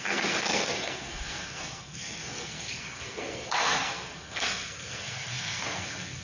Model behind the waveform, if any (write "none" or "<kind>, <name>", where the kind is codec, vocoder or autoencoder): codec, SNAC